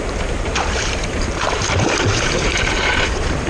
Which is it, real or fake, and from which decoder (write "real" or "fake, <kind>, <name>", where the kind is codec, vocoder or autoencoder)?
fake, vocoder, BigVGAN v2